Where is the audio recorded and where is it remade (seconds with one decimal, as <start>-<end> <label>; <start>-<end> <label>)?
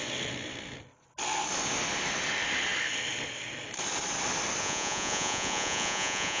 0.0-4.6 recorded; 4.6-6.4 remade